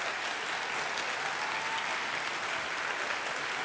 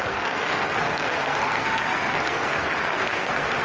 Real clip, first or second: first